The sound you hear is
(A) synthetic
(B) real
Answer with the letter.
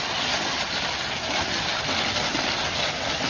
B